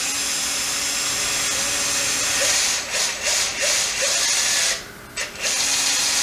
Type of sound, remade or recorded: recorded